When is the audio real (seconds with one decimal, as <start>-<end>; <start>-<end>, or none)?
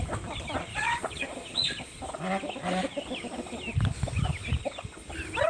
0.0-0.7; 2.0-5.5